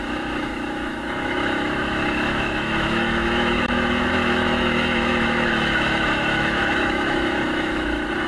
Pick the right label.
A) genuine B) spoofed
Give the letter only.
B